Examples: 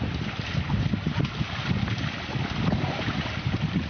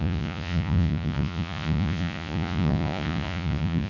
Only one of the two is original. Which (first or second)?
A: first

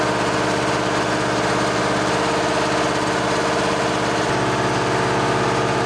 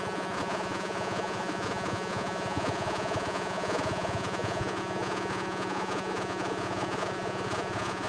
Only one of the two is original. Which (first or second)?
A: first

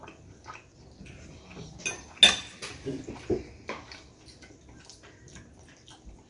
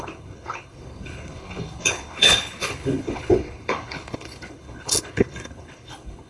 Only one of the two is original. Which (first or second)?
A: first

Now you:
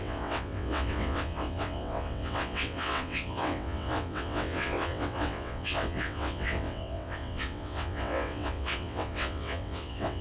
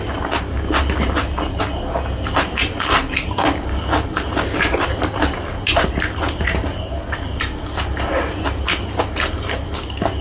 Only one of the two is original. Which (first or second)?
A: second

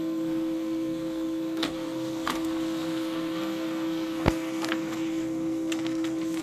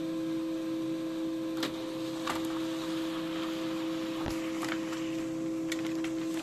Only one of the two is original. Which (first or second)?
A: second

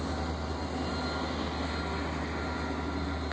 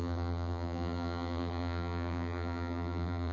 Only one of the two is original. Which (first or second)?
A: first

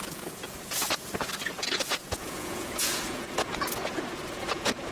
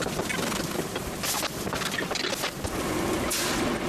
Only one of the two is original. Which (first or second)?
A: second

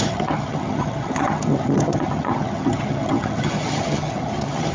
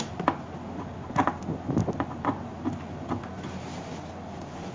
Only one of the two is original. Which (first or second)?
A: second